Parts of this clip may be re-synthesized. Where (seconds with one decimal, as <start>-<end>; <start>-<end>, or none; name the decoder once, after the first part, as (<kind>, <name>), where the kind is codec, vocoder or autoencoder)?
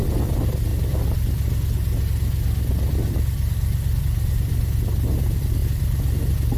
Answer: none